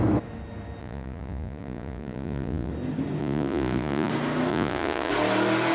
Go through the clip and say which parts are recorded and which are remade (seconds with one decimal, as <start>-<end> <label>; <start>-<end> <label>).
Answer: 0.0-0.8 recorded; 0.8-2.7 remade; 2.7-3.2 recorded; 3.2-4.1 remade; 4.1-4.5 recorded; 4.5-5.1 remade; 5.1-5.7 recorded